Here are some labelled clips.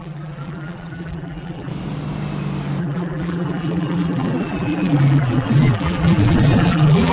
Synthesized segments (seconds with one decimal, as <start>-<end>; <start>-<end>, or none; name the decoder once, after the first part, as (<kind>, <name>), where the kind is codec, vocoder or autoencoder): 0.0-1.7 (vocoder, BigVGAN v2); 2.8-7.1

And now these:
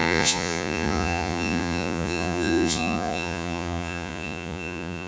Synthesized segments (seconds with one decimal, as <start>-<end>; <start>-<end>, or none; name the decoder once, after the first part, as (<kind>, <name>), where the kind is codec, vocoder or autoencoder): 0.0-5.1 (vocoder, Vocos)

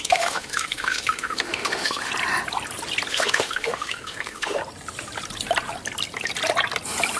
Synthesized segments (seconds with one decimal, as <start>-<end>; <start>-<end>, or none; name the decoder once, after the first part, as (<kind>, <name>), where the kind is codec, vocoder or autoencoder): 0.0-2.1 (autoencoder, DAC-VAE); 3.1-4.6

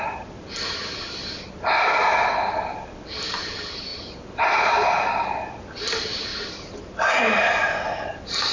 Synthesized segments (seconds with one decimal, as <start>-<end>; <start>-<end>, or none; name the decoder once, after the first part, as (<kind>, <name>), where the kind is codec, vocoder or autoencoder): none

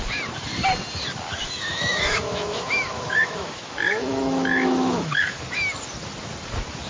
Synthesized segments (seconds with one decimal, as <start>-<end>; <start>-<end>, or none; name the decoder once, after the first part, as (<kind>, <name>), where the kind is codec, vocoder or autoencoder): 1.3-5.4 (autoencoder, DAC-VAE)

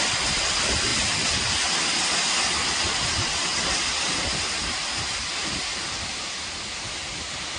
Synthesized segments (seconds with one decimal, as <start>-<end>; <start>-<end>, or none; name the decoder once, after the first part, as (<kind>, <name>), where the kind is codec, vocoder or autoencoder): none

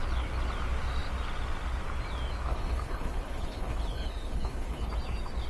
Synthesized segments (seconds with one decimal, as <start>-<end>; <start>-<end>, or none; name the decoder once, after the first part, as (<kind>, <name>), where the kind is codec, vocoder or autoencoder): 2.5-4.9 (codec, HILCodec)

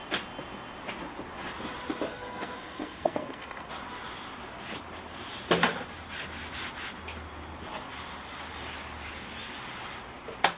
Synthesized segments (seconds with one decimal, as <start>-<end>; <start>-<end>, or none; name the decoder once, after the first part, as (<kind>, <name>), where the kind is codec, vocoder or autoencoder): 2.1-3.7 (codec, SNAC)